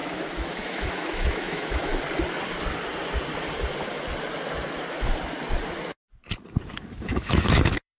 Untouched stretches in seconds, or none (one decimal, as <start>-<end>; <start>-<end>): 1.9-6.7